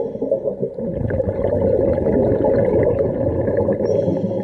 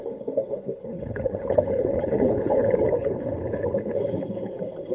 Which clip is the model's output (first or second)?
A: second